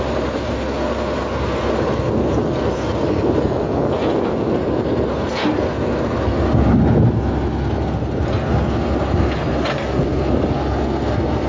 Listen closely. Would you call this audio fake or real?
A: real